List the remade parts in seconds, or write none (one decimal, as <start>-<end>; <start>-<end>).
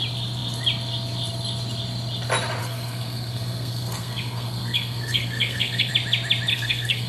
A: 2.6-5.9; 6.5-7.1